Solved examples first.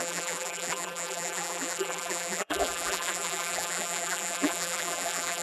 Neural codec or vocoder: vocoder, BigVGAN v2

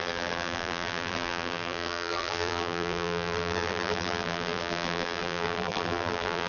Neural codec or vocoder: vocoder, BigVGAN v2